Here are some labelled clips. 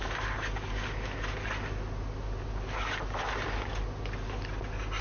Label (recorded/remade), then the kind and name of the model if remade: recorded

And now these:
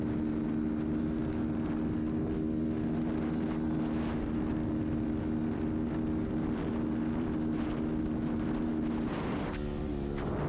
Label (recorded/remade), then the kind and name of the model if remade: recorded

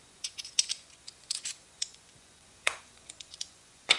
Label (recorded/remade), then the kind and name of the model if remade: remade, vocoder, Vocos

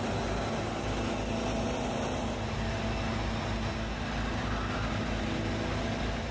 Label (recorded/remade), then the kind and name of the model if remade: recorded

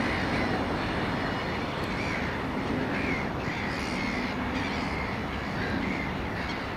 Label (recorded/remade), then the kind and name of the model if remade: recorded